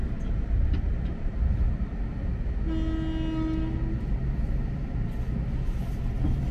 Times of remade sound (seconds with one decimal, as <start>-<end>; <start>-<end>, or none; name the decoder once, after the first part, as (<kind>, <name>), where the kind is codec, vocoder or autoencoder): 0.0-2.3 (vocoder, BigVGAN v2); 6.0-6.5